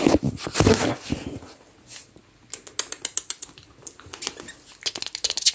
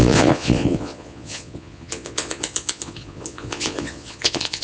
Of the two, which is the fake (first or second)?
second